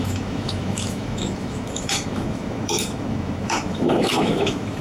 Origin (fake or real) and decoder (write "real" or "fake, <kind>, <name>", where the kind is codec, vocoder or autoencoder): fake, autoencoder, DAC-VAE